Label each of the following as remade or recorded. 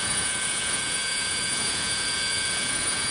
remade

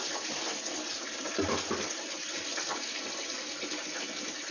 recorded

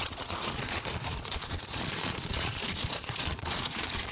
remade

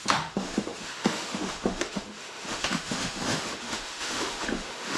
remade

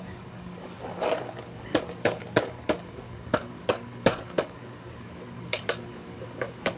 remade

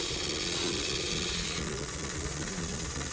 remade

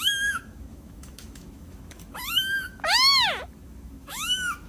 remade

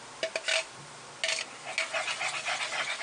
recorded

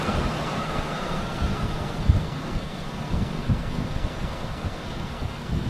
remade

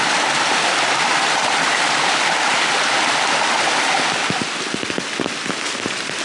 recorded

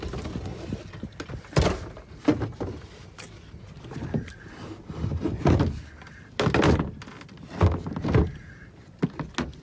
recorded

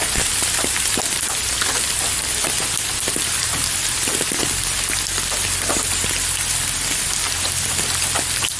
recorded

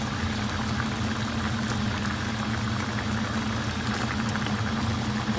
recorded